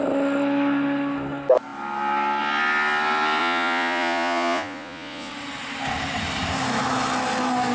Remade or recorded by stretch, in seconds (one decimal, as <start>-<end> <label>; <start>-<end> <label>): 0.0-3.4 recorded; 3.4-5.3 remade; 5.3-7.7 recorded

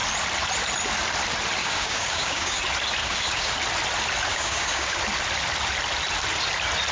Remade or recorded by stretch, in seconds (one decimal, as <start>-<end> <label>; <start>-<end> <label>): 0.0-1.6 recorded; 1.6-2.6 remade; 2.6-3.0 recorded; 3.0-3.5 remade; 3.5-4.3 recorded; 4.3-5.0 remade; 5.0-6.9 recorded

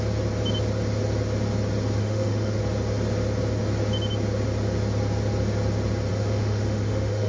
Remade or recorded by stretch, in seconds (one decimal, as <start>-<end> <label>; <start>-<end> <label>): 0.0-2.0 recorded; 2.0-2.6 remade; 2.6-6.1 recorded; 6.1-7.3 remade

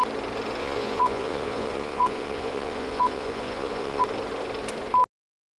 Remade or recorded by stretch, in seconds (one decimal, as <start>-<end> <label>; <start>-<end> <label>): 0.0-0.6 recorded; 0.6-4.0 remade; 4.0-5.6 recorded

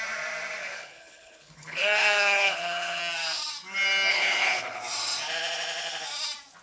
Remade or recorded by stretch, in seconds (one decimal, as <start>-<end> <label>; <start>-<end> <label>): 0.0-0.6 recorded; 0.6-3.0 remade; 3.0-4.1 recorded; 4.1-4.8 remade; 4.8-6.6 recorded

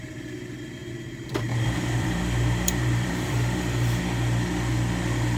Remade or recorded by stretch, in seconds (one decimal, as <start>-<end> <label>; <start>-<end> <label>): 0.0-0.8 recorded; 0.8-4.0 remade; 4.0-5.4 recorded

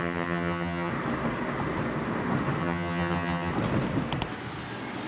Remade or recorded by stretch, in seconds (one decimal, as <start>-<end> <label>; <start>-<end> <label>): 0.0-0.9 remade; 0.9-2.6 recorded; 2.6-3.5 remade; 3.5-5.1 recorded